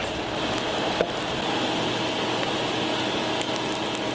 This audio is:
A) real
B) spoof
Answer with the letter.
A